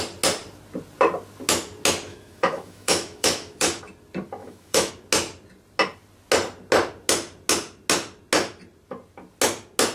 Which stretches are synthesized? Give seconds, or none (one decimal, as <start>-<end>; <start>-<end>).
2.1-3.8; 4.4-4.9